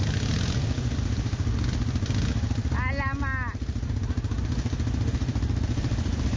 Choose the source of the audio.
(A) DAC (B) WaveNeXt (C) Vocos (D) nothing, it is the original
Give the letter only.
D